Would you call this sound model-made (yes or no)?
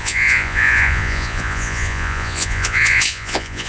yes